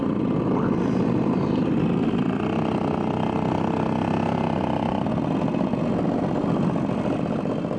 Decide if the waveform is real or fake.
real